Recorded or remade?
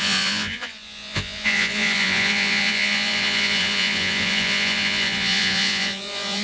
remade